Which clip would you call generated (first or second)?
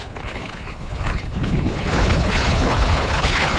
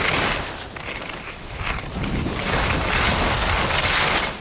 first